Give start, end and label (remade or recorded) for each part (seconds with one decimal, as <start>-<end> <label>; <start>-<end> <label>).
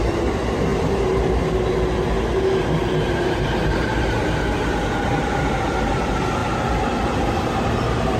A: 0.0-0.7 recorded; 0.7-1.3 remade; 1.3-2.8 recorded; 2.8-4.2 remade; 4.2-8.2 recorded